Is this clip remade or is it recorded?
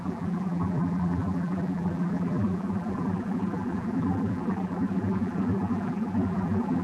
remade